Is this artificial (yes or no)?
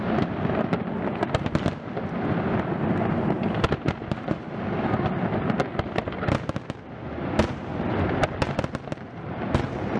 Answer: no